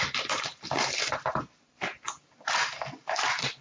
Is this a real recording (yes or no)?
yes